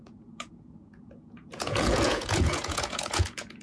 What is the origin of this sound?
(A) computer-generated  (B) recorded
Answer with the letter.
A